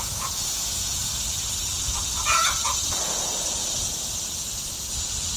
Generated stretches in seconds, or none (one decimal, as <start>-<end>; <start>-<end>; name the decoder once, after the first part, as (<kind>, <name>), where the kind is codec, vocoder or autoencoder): 0.0-1.0 (vocoder, Vocos); 1.6-3.6; 4.1-5.4